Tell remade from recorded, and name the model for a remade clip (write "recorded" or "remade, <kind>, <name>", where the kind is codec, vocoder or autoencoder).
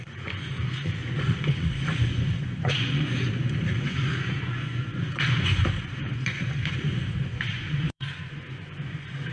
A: remade, vocoder, Vocos